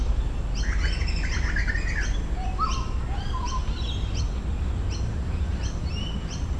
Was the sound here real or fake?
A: real